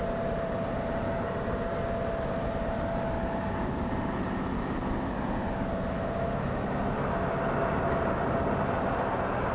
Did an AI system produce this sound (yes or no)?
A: no